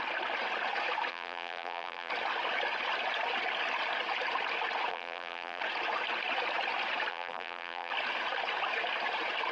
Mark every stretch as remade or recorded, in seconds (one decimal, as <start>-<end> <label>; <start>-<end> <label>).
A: 0.0-1.1 recorded; 1.1-2.1 remade; 2.1-4.9 recorded; 4.9-5.6 remade; 5.6-7.1 recorded; 7.1-7.9 remade; 7.9-9.5 recorded